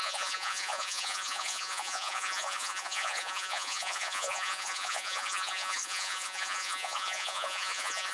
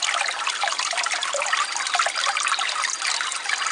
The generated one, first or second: first